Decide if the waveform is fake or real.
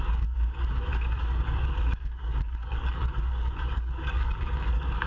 fake